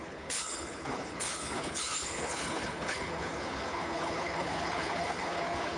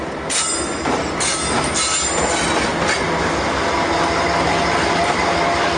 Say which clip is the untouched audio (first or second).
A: second